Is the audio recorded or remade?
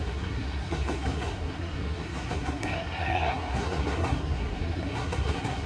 remade